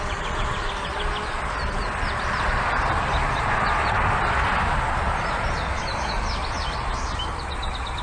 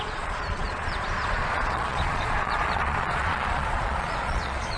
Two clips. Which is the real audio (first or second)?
first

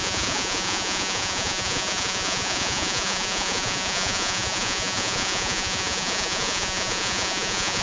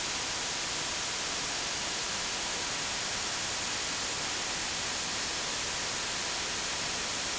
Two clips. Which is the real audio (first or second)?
second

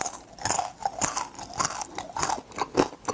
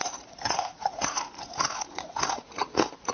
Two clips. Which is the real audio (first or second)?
first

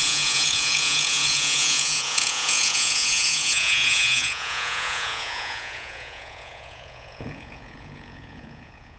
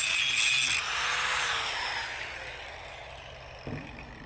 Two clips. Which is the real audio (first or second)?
second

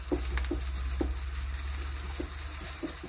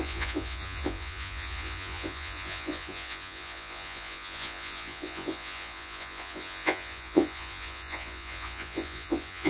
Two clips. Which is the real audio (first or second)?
first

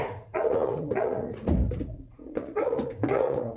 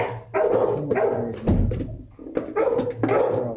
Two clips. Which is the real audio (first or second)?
second